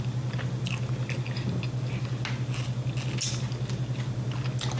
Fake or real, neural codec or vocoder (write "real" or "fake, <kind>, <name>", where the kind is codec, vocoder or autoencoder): real